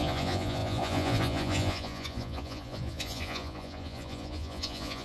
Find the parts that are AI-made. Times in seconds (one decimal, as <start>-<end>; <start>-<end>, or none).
0.0-5.0